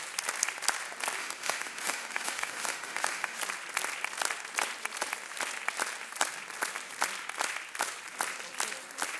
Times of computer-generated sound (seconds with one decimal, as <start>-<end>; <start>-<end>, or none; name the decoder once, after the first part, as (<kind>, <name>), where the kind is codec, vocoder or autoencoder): 1.2-3.4 (autoencoder, DAC-VAE)